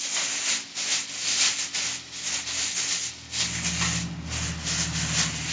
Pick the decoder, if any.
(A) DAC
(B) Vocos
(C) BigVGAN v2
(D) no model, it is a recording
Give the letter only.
D